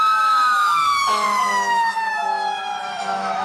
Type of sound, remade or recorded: remade